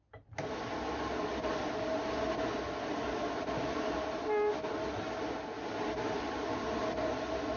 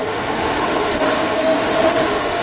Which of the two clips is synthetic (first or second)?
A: second